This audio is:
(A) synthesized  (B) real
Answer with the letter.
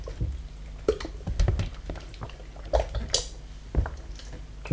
B